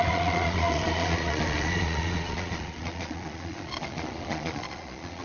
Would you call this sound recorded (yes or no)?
no